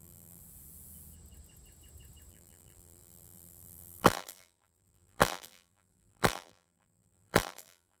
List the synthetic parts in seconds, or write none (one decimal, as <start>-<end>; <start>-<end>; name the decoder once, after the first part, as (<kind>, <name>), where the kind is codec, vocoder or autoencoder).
0.0-0.4 (vocoder, BigVGAN v2); 2.3-8.0